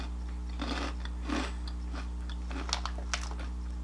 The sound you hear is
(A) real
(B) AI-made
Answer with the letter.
A